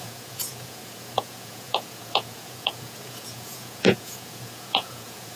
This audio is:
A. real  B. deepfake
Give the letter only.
B